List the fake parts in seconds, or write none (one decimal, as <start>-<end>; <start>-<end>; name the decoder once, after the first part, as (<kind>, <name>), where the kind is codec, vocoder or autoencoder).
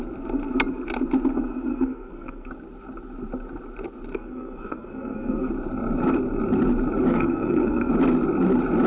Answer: 1.7-2.5 (codec, SNAC); 4.1-5.5; 7.1-7.9